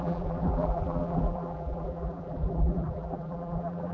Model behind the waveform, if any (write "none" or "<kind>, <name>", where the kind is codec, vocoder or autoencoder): vocoder, BigVGAN v2